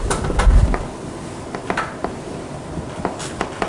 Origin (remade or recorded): recorded